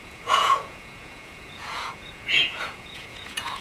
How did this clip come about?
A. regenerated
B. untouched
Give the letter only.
A